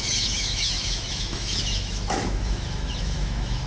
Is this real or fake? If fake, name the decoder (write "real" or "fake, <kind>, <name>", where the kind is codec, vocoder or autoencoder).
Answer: fake, autoencoder, DAC-VAE